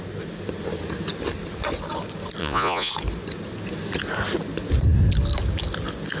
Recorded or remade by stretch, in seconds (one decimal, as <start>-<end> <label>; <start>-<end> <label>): 0.0-2.4 recorded; 2.4-2.9 remade; 2.9-6.2 recorded